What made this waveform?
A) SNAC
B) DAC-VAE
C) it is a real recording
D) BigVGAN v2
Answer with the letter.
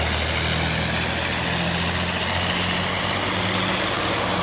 C